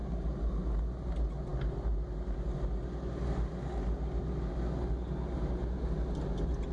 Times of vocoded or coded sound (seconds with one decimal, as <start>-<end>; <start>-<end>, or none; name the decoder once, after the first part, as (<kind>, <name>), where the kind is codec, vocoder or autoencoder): none